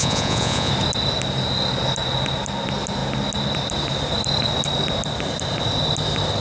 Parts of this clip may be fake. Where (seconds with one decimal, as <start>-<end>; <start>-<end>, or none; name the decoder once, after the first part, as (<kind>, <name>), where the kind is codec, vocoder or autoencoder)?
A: 0.0-0.7 (vocoder, Vocos)